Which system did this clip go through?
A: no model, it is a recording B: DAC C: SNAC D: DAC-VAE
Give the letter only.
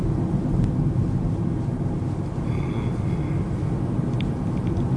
A